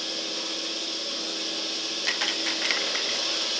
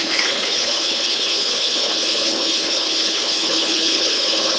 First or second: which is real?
first